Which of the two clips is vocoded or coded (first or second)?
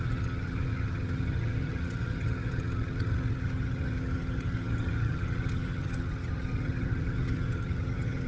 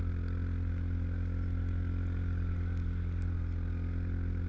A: first